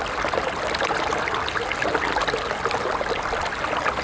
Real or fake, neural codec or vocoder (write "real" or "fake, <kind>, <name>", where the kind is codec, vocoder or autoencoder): real